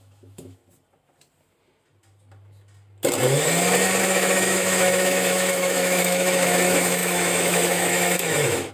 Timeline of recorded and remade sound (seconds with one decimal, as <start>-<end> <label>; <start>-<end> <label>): 0.0-0.6 remade; 0.6-4.0 recorded; 4.0-8.7 remade